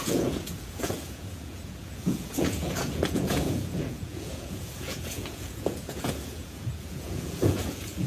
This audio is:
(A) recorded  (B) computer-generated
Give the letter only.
B